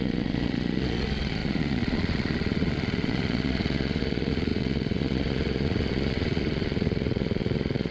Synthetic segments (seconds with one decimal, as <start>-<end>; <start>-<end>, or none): 0.0-7.9